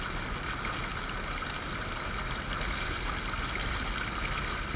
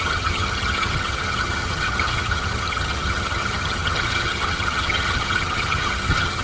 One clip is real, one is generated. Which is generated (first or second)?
second